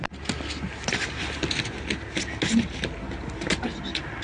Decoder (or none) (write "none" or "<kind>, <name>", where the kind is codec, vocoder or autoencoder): none